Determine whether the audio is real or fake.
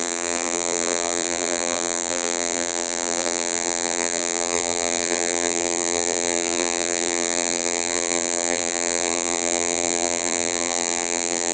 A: fake